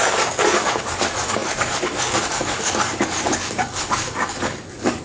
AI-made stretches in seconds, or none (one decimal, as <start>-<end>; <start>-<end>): 0.0-5.0